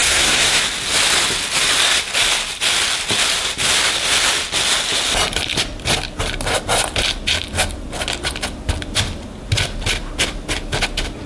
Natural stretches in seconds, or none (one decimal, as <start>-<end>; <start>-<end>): 0.6-11.3